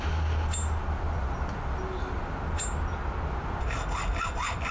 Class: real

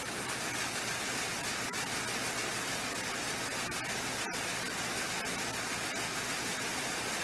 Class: real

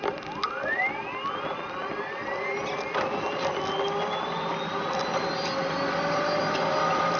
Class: real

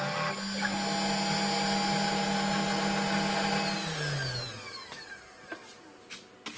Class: real